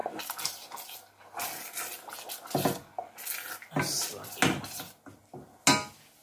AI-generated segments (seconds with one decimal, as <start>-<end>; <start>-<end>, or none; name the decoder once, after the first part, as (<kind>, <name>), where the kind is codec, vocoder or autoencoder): none